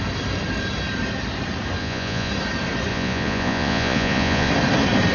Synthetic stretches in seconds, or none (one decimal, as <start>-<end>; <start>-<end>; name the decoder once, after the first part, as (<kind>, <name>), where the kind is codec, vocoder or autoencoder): 1.8-2.3 (vocoder, Vocos); 2.9-4.5